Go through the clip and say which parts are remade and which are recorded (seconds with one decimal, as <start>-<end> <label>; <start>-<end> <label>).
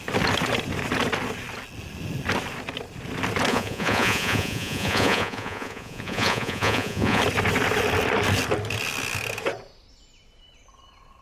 0.0-3.5 recorded; 3.5-7.2 remade; 7.2-11.2 recorded